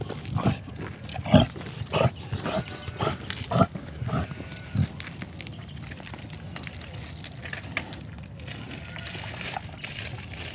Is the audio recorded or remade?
recorded